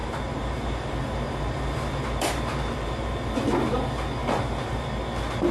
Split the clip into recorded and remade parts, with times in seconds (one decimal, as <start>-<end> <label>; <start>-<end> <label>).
0.0-3.3 remade; 3.3-4.2 recorded; 4.2-4.8 remade; 4.8-5.5 recorded